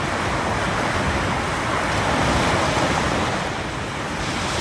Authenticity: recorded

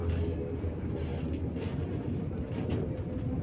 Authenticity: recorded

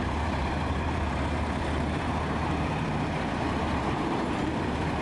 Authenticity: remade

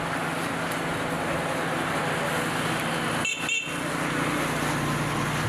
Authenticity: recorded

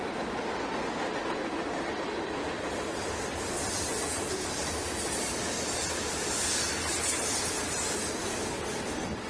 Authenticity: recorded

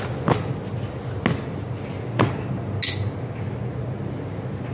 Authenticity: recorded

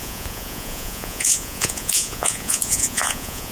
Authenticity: remade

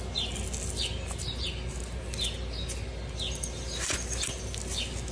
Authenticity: recorded